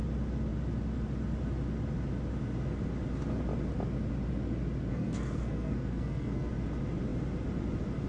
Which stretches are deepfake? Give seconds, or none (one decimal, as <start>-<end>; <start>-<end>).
4.9-6.5